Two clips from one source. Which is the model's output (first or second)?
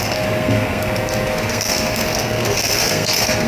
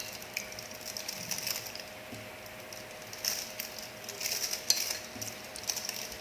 first